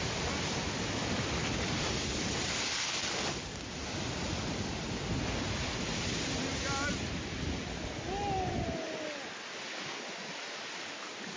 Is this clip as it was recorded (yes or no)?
yes